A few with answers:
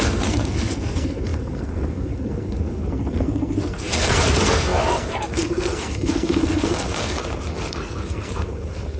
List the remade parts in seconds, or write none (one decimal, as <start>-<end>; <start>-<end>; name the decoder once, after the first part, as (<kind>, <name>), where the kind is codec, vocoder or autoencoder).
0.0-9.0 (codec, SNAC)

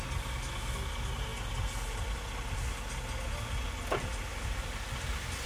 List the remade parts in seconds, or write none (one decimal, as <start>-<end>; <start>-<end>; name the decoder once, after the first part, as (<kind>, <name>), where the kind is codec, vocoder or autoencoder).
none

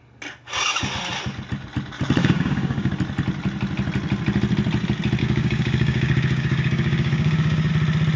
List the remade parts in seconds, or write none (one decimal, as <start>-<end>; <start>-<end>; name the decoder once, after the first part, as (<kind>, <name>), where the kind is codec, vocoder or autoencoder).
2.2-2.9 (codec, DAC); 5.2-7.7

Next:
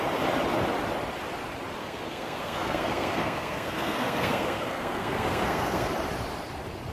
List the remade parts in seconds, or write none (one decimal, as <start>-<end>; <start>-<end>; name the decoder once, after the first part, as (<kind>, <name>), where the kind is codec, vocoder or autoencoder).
1.8-5.9 (codec, SNAC)